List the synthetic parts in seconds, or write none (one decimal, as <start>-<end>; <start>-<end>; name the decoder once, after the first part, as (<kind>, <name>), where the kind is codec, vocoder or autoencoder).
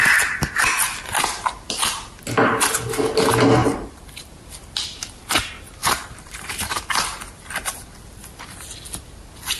3.6-4.3 (vocoder, BigVGAN v2); 5.8-6.8